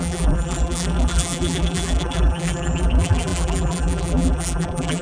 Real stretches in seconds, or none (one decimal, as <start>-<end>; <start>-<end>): none

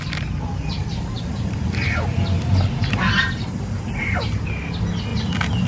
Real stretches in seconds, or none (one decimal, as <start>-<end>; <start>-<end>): 0.0-0.8; 4.2-5.1

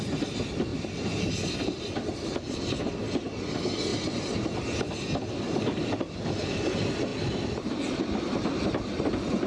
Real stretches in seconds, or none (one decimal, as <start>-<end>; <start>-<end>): 0.0-0.7; 2.8-3.9; 5.3-7.1; 8.6-9.5

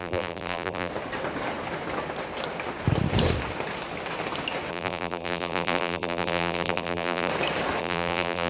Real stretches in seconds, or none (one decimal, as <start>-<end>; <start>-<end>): 0.9-4.7; 7.3-7.8

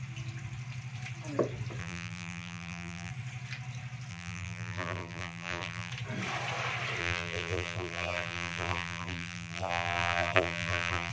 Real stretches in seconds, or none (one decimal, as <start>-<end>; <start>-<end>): 0.0-1.8; 3.1-4.1; 5.9-7.0

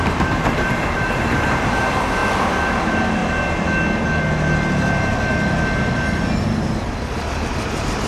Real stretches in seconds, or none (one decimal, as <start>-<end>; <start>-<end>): 2.2-2.8; 3.2-7.3